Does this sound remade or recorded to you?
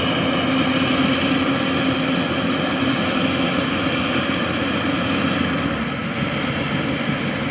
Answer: recorded